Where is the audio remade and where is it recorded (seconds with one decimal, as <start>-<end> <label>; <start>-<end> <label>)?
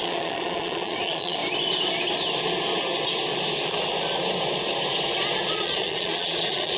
0.0-1.4 remade; 1.4-5.5 recorded; 5.5-6.8 remade